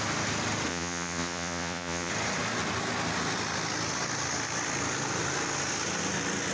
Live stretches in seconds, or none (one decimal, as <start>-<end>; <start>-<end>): 0.0-0.7; 2.1-6.5